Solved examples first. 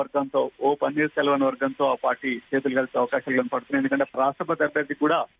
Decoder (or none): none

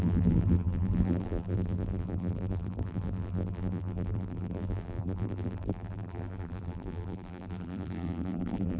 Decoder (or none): vocoder, BigVGAN v2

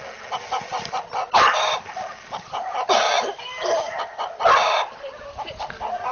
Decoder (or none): none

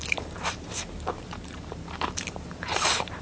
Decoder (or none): vocoder, BigVGAN v2